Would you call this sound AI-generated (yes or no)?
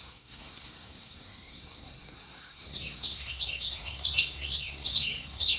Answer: yes